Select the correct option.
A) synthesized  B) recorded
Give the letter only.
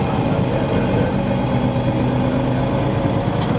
B